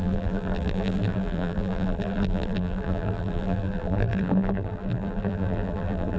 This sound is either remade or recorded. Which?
remade